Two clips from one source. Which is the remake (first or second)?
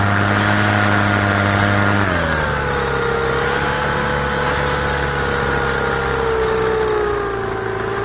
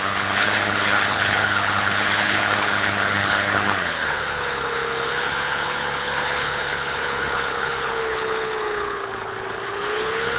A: second